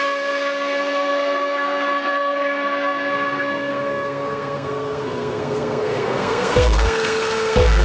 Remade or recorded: remade